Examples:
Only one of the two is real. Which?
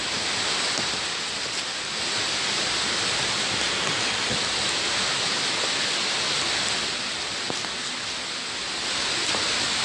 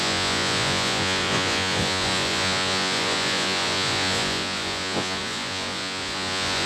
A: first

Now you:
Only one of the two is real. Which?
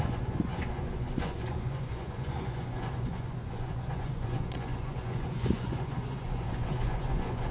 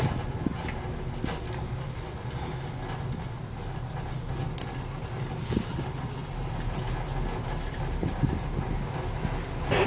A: second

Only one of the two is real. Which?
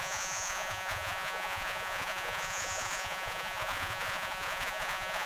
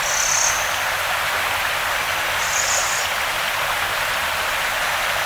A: second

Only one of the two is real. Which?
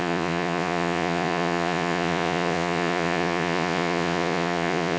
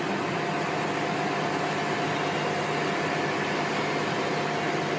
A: second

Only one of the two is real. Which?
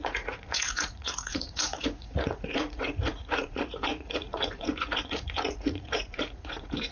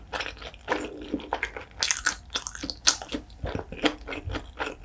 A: second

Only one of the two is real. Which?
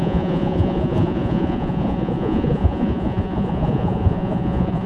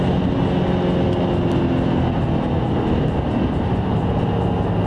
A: second